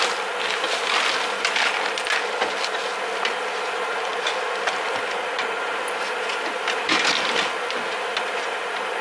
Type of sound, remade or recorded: recorded